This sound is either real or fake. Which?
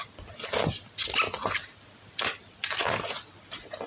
real